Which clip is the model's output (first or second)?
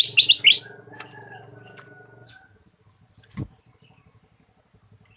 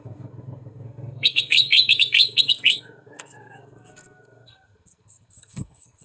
second